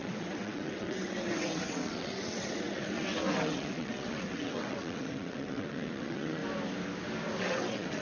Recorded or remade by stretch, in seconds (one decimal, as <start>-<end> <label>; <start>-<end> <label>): 0.0-6.4 remade; 6.4-7.4 recorded; 7.4-8.0 remade